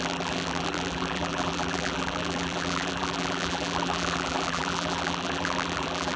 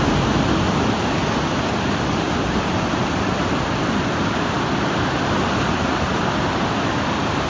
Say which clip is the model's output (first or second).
first